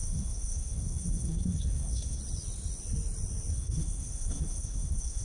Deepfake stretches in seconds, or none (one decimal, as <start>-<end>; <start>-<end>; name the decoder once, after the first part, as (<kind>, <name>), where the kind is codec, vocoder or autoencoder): 0.0-2.2 (codec, SNAC); 3.5-5.2